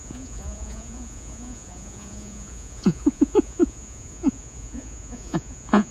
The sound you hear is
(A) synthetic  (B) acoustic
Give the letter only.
A